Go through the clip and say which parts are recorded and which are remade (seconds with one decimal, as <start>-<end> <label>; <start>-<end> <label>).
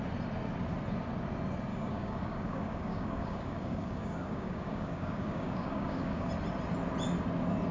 0.0-1.7 recorded; 1.7-6.3 remade; 6.3-7.7 recorded